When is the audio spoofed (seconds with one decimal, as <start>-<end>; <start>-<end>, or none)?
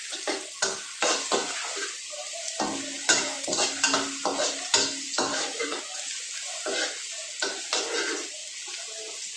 3.0-3.5; 5.3-5.8